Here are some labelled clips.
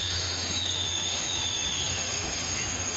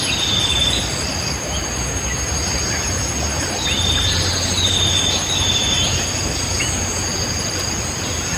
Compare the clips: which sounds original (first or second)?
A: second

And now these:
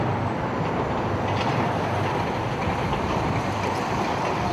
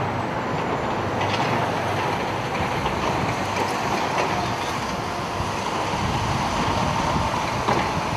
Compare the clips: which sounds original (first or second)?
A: second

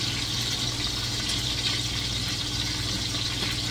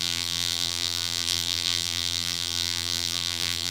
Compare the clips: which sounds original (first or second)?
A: first